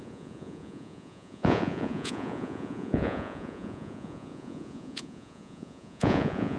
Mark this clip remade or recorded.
remade